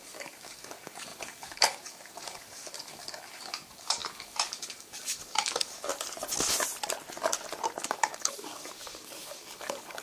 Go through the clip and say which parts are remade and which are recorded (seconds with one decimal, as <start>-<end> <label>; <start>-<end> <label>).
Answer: 0.0-5.9 remade; 5.9-7.8 recorded; 7.8-10.0 remade

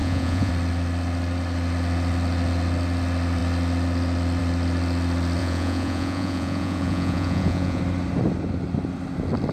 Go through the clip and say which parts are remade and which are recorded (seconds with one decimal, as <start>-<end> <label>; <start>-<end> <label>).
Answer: 0.0-0.5 remade; 0.5-5.4 recorded; 5.4-7.8 remade; 7.8-9.5 recorded

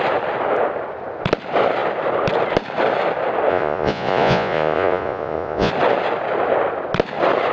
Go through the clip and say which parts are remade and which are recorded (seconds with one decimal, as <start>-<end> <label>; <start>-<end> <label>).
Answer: 0.0-3.5 recorded; 3.5-5.7 remade; 5.7-7.5 recorded

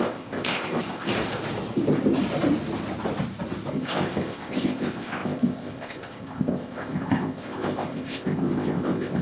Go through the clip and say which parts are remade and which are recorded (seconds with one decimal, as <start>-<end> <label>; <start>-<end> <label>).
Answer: 0.0-1.1 remade; 1.1-3.7 recorded; 3.7-9.2 remade